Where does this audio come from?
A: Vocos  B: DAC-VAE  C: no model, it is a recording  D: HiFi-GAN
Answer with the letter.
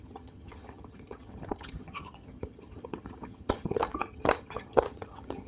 D